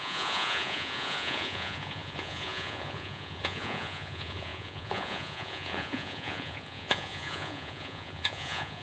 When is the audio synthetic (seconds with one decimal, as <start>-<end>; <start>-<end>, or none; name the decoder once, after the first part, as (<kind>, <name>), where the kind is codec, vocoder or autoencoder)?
0.0-8.8 (vocoder, Vocos)

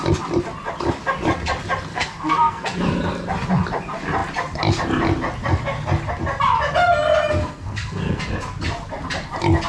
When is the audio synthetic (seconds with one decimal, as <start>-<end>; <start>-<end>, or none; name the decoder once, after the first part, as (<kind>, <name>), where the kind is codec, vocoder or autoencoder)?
1.9-2.8 (codec, SNAC); 7.4-8.2